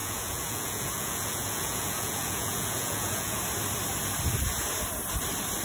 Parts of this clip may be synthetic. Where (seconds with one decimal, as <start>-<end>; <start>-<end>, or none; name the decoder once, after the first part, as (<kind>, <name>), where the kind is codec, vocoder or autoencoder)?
0.0-3.4 (vocoder, Vocos)